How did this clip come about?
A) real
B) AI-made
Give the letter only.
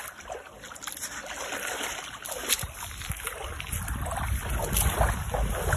A